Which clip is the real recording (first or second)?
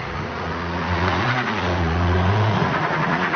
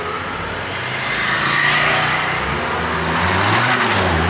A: second